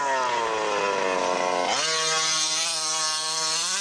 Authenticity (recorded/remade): recorded